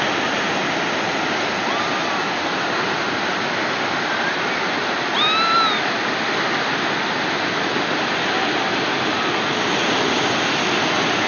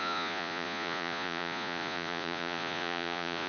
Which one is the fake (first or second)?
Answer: second